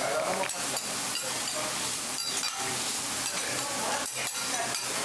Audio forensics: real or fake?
real